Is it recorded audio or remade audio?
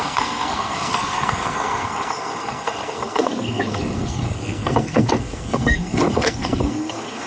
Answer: remade